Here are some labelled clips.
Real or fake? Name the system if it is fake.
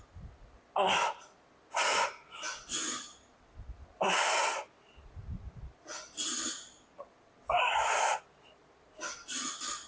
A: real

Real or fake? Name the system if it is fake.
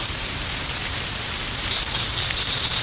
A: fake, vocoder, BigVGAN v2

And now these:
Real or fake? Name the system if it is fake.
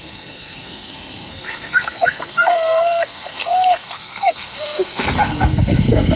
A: fake, codec, SNAC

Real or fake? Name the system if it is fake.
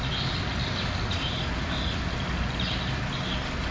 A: real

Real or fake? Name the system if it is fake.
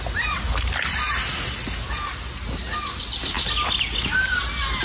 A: real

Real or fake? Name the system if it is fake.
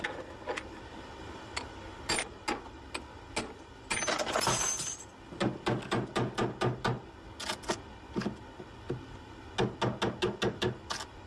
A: real